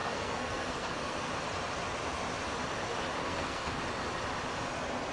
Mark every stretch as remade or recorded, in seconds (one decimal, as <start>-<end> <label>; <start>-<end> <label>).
0.0-1.3 remade; 1.3-3.2 recorded; 3.2-3.8 remade; 3.8-5.1 recorded